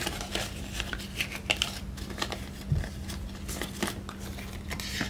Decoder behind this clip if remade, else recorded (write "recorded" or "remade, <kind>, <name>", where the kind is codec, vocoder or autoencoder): recorded